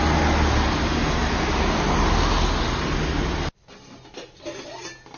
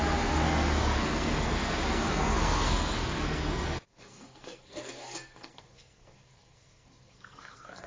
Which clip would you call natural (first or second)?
first